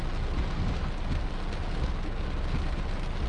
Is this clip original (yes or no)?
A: yes